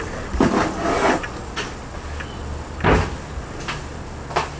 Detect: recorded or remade recorded